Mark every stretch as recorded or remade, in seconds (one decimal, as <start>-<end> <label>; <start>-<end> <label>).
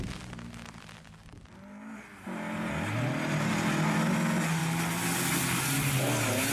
0.0-6.5 recorded